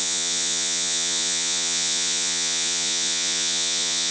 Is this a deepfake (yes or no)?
yes